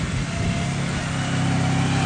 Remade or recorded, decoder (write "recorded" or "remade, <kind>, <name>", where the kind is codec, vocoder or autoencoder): recorded